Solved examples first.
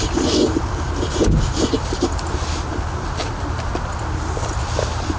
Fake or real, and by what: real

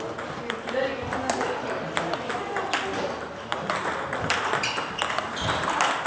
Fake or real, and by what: real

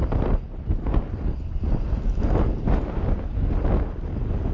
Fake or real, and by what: real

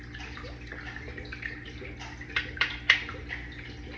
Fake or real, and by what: real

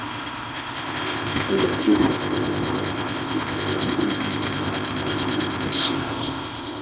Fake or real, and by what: fake, codec, ZipCodec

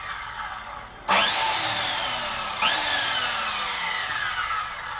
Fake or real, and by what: real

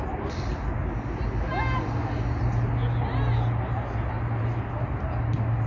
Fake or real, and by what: real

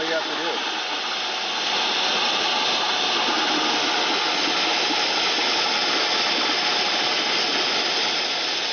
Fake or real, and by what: real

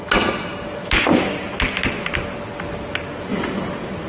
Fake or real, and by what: real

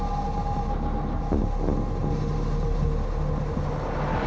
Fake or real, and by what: real